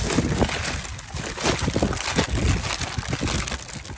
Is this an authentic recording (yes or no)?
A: yes